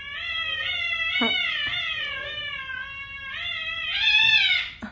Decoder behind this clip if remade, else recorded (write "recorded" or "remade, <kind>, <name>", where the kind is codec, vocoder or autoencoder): recorded